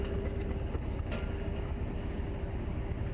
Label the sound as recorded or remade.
recorded